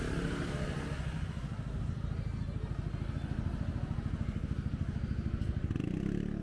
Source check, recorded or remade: recorded